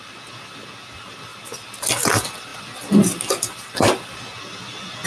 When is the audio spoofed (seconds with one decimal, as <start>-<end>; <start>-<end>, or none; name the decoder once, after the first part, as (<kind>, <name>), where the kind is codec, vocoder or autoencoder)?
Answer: none